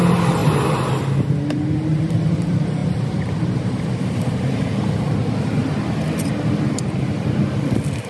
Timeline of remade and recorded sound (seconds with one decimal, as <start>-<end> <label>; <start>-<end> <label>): 0.0-8.1 recorded